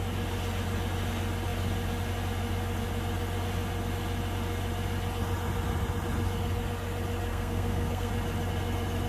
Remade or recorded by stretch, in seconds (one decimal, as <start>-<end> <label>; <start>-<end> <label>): 0.0-7.3 recorded; 7.3-8.1 remade; 8.1-9.1 recorded